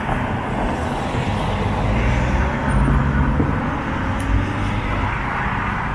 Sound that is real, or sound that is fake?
real